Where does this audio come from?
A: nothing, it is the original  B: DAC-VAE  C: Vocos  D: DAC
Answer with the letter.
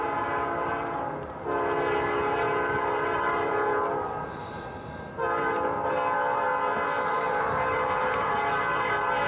A